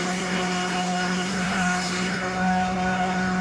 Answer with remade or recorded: remade